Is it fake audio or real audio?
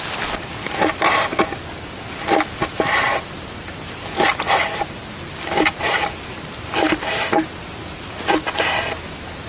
real